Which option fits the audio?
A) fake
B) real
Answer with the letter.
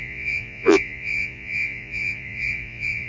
A